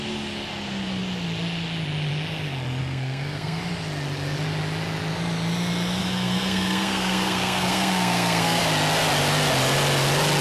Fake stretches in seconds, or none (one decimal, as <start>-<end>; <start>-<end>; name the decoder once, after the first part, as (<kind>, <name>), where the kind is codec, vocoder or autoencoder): 2.8-3.6 (codec, SNAC); 6.0-8.6